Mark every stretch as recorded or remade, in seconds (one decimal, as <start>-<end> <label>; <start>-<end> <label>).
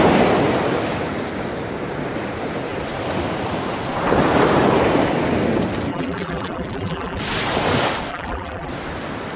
0.0-5.9 recorded; 5.9-7.2 remade; 7.2-8.1 recorded; 8.1-8.7 remade; 8.7-9.4 recorded